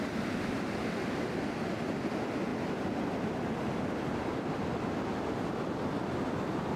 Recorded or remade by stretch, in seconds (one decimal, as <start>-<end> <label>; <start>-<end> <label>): 0.0-6.8 recorded